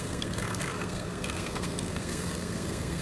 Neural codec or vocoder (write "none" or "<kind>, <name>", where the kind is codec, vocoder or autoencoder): codec, SNAC